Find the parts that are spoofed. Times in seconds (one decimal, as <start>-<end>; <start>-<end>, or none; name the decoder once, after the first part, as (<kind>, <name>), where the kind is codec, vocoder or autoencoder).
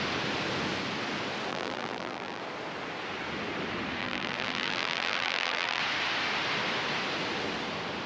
1.5-2.4 (vocoder, BigVGAN v2); 4.0-5.8